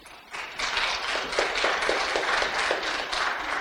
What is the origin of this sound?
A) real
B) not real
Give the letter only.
A